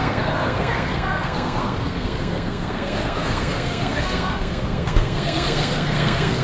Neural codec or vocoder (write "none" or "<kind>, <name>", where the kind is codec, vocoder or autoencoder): codec, SNAC